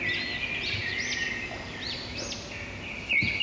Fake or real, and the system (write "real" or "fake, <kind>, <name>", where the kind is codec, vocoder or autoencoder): real